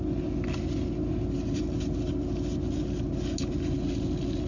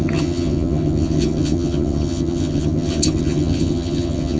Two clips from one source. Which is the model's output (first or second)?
second